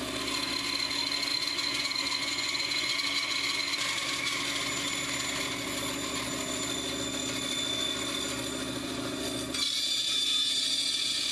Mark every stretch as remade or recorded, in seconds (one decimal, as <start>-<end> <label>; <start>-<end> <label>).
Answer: 0.0-1.3 recorded; 1.3-2.9 remade; 2.9-11.3 recorded